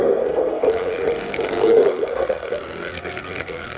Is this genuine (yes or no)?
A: no